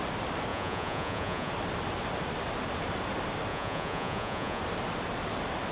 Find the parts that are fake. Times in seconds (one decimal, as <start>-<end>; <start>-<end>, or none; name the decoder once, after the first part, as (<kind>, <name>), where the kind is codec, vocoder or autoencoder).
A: 0.5-1.5 (vocoder, Vocos); 3.5-4.6

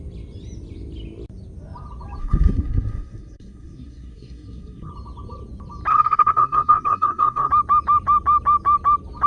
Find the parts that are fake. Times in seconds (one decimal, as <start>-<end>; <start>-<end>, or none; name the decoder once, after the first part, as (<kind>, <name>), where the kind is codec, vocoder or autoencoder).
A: 2.2-4.9 (codec, SNAC); 5.9-7.5

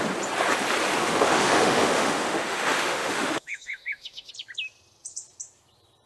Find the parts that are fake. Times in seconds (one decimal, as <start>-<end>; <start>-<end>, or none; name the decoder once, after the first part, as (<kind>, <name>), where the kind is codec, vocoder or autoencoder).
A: 1.0-4.3 (autoencoder, DAC-VAE)

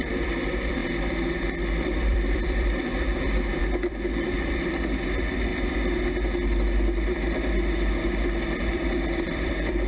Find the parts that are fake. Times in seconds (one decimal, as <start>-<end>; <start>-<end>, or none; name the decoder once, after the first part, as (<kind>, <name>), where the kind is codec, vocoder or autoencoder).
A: 0.0-0.8 (vocoder, BigVGAN v2); 1.8-5.5; 8.7-9.9

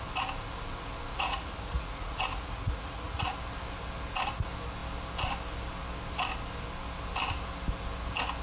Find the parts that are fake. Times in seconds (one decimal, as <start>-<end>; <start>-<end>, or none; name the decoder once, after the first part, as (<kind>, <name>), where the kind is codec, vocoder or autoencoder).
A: 1.1-3.3 (vocoder, Vocos)

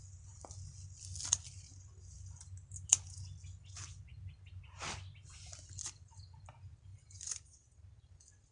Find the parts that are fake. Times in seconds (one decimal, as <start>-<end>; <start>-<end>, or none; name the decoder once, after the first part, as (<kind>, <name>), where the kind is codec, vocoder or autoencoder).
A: 6.9-8.1 (vocoder, BigVGAN v2)